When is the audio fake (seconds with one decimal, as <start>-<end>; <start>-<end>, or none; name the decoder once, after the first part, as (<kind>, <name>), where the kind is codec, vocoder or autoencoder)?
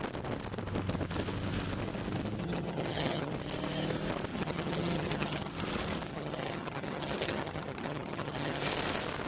2.4-3.3 (vocoder, HiFi-GAN); 4.3-5.5; 6.1-8.6